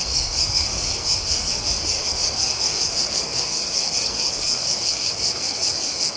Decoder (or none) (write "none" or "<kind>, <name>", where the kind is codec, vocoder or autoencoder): codec, SNAC